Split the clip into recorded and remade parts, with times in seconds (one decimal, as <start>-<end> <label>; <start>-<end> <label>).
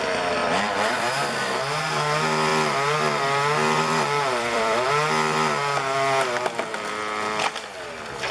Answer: 0.0-0.4 recorded; 0.4-1.1 remade; 1.1-2.5 recorded; 2.5-4.9 remade; 4.9-6.7 recorded; 6.7-7.5 remade; 7.5-8.3 recorded